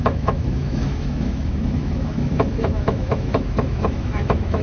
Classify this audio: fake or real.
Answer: fake